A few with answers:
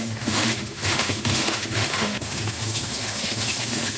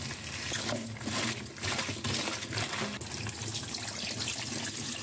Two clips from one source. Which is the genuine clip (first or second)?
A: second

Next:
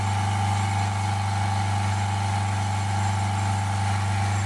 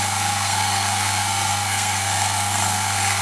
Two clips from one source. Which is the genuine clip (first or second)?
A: first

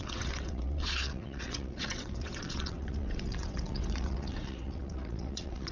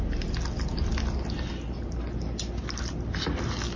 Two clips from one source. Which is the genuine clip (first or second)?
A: second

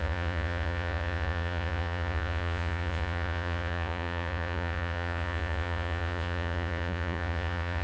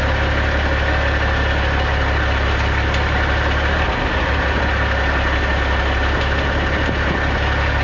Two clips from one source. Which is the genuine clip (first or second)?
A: second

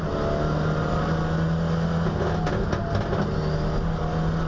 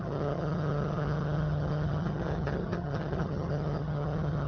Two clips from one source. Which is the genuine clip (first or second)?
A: first